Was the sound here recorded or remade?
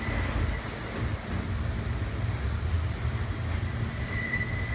recorded